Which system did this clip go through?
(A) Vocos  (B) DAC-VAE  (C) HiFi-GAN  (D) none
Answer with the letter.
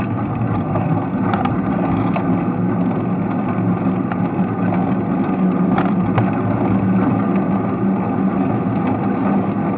D